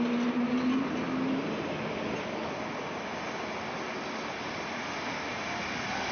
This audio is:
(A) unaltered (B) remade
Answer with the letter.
A